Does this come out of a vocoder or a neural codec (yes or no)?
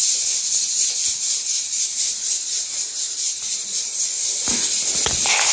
no